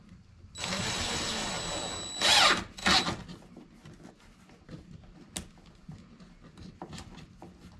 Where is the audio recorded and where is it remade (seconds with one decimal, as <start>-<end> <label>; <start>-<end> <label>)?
0.0-7.8 recorded